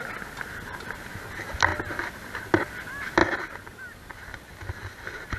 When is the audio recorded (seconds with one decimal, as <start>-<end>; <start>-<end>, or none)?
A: 0.0-5.4